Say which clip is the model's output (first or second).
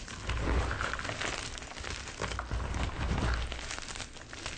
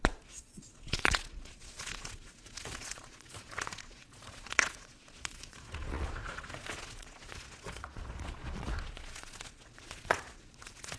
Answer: second